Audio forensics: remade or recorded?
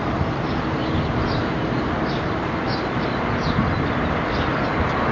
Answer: recorded